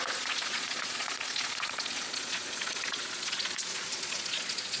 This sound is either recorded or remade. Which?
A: remade